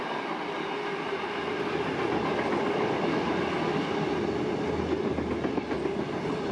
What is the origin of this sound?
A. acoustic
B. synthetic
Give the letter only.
A